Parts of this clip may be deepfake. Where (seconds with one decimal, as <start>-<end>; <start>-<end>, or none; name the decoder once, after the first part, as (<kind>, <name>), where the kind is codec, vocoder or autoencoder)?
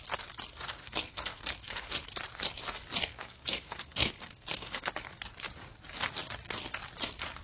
0.8-1.9 (codec, SNAC); 3.1-4.9